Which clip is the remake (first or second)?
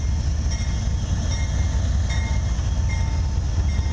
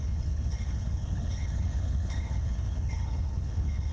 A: second